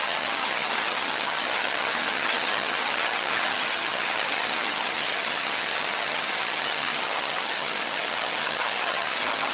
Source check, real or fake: fake